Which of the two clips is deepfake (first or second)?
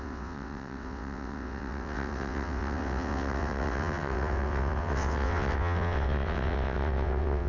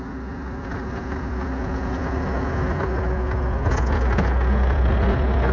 first